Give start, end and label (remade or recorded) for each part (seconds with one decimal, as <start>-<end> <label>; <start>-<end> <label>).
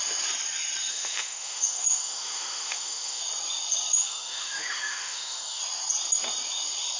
0.0-0.9 recorded; 0.9-3.2 remade; 3.2-4.0 recorded; 4.0-5.6 remade; 5.6-7.0 recorded